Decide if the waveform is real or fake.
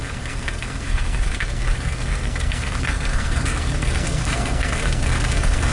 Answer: fake